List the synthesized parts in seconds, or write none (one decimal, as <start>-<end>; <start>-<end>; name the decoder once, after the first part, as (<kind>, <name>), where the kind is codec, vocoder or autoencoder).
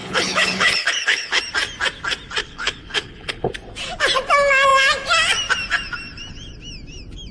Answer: 0.0-1.4 (codec, HILCodec); 2.4-3.5